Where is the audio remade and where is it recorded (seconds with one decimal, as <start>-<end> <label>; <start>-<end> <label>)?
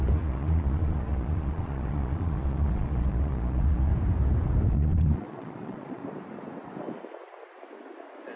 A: 0.0-3.9 remade; 3.9-4.7 recorded; 4.7-6.0 remade; 6.0-8.4 recorded